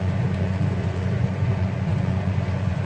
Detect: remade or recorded remade